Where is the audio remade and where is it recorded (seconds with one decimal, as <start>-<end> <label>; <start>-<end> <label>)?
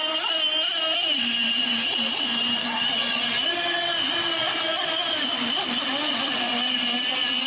0.0-2.6 recorded; 2.6-3.2 remade; 3.2-7.5 recorded